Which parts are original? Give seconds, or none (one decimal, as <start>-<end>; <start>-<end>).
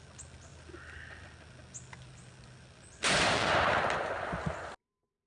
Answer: 0.0-5.3